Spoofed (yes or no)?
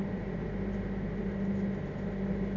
no